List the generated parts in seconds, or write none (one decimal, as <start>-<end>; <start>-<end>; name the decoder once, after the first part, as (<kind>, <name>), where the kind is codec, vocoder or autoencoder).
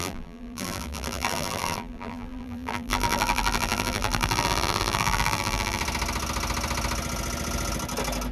0.0-5.8 (vocoder, BigVGAN v2)